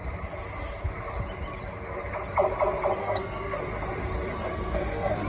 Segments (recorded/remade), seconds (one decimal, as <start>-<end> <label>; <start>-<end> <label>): 0.0-3.0 recorded; 3.0-3.6 remade; 3.6-4.3 recorded; 4.3-5.3 remade